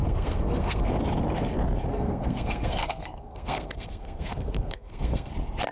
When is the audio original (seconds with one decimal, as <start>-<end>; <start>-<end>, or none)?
0.9-1.9; 5.3-5.7